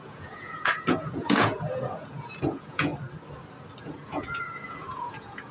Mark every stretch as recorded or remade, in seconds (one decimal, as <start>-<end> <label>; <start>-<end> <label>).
0.0-2.9 remade; 2.9-3.8 recorded; 3.8-5.5 remade